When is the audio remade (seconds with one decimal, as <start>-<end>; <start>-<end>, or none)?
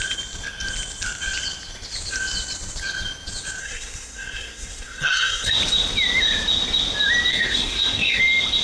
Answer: 3.6-5.6; 7.3-8.2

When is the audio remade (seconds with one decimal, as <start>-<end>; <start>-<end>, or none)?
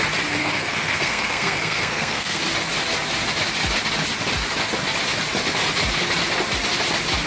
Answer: 0.4-2.4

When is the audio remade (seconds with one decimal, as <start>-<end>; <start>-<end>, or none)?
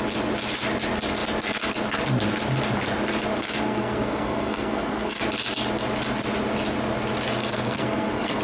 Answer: 3.6-5.2; 7.4-8.4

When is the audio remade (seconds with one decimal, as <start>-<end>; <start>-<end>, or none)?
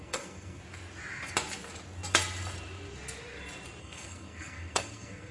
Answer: 0.0-0.6; 3.8-5.3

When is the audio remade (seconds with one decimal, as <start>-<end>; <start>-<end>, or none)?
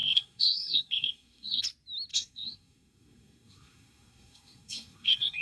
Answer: 0.0-1.6; 2.1-5.4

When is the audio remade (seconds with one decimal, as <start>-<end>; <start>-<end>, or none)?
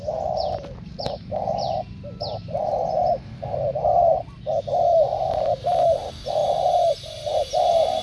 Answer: none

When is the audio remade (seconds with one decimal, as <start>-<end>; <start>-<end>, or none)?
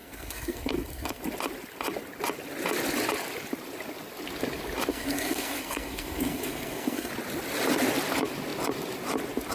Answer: 0.0-1.2; 4.9-7.1